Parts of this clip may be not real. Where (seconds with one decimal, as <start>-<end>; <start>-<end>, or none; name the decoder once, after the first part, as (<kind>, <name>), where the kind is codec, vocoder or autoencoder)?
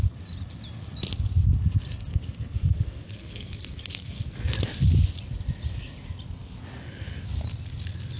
2.1-4.6 (codec, SNAC)